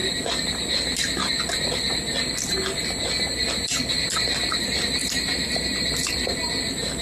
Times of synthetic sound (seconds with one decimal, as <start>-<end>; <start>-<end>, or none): 5.0-6.1